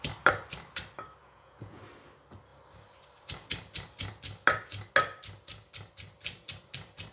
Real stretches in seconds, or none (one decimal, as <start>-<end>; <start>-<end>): 0.0-1.2; 1.8-7.1